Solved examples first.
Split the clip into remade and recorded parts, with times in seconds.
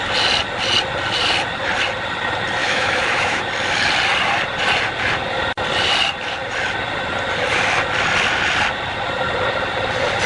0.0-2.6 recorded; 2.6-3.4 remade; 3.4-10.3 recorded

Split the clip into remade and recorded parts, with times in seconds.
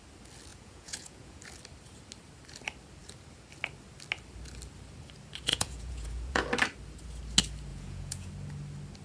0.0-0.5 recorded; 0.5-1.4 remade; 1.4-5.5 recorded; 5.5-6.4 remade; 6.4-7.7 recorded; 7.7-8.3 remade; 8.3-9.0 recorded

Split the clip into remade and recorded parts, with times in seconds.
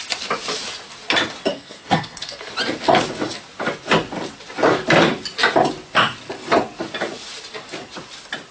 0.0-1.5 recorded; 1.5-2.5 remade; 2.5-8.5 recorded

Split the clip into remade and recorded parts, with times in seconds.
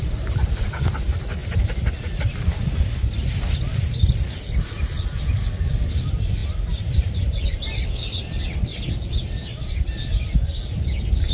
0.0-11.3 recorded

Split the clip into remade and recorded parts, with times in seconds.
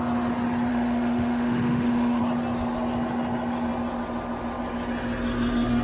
0.0-0.7 recorded; 0.7-2.2 remade; 2.2-5.8 recorded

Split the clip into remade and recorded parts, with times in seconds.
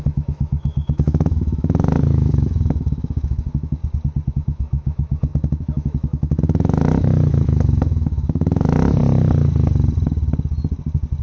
0.0-3.8 remade; 3.8-4.3 recorded; 4.3-9.0 remade; 9.0-11.2 recorded